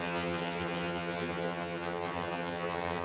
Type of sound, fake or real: fake